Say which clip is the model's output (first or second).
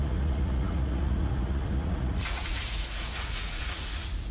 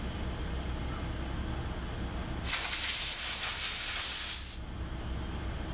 first